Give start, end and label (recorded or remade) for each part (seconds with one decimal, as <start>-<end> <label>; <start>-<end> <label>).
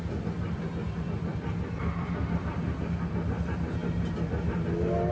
0.0-5.1 recorded